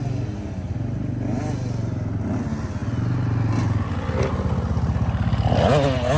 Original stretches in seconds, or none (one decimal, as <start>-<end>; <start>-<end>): 0.0-6.2

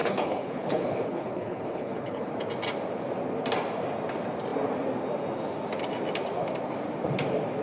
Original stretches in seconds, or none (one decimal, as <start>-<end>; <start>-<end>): 2.3-7.6

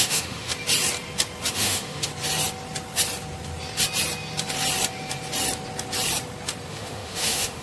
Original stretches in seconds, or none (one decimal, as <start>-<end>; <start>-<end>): 0.5-1.5; 2.1-6.7

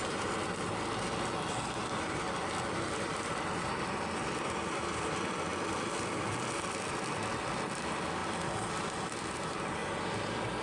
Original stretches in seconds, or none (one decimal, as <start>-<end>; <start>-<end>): 0.4-1.8; 8.2-8.7

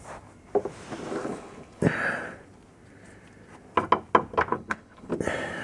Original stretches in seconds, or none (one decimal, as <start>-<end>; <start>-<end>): 0.0-1.2; 1.8-4.5; 5.1-5.6

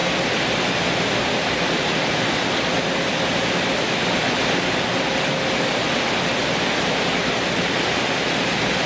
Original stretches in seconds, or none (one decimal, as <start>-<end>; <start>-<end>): 4.0-8.9

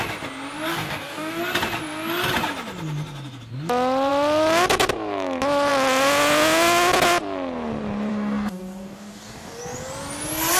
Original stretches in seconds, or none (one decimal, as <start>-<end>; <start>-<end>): 0.0-0.7; 1.4-8.1; 9.6-10.6

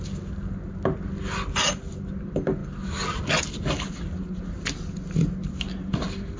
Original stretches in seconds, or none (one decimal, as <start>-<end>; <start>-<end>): 0.0-6.4